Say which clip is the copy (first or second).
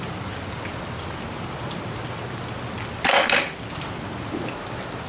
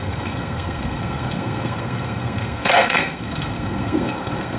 second